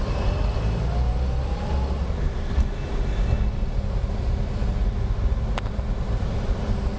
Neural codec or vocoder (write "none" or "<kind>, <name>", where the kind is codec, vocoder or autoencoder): none